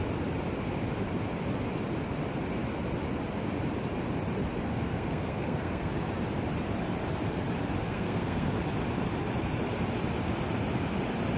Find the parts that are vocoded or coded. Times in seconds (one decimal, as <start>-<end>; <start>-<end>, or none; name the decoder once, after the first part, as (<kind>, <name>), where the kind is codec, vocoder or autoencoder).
4.7-5.9 (codec, SNAC); 7.8-8.5